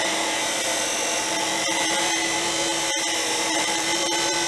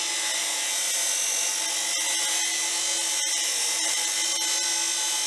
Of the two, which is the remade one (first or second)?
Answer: first